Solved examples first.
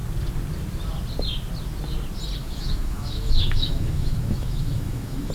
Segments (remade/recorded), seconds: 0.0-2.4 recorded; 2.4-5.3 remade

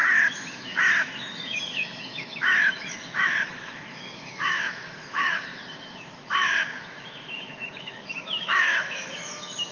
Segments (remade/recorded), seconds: 0.0-9.7 remade

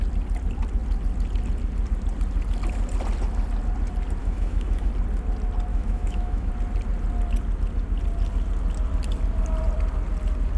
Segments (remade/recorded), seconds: 0.0-4.2 recorded; 4.2-4.9 remade; 4.9-5.7 recorded; 5.7-6.5 remade; 6.5-10.6 recorded

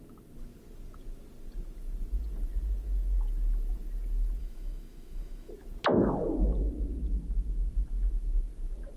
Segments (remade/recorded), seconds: 0.0-4.4 recorded; 4.4-5.5 remade; 5.5-9.0 recorded

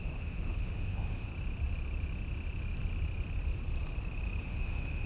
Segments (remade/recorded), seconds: 0.0-1.3 remade; 1.3-4.4 recorded; 4.4-5.1 remade

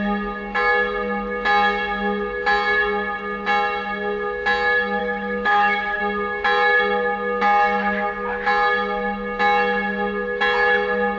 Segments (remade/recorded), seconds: 0.0-5.0 recorded; 5.0-6.0 remade; 6.0-11.2 recorded

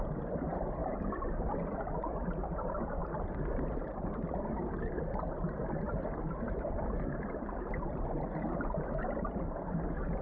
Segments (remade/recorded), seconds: 0.0-10.2 recorded